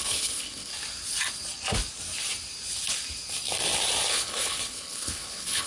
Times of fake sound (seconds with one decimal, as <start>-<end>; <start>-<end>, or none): 0.0-0.7; 4.1-5.7